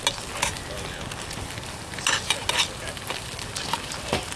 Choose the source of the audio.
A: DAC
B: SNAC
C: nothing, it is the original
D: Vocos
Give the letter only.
C